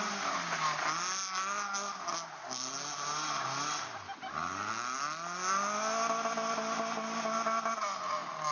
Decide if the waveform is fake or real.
real